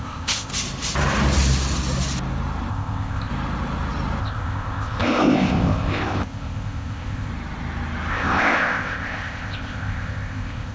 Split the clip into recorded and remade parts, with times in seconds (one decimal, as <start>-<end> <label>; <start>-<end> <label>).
0.0-0.5 remade; 0.5-2.7 recorded; 2.7-3.3 remade; 3.3-4.2 recorded; 4.2-7.3 remade; 7.3-8.1 recorded; 8.1-10.7 remade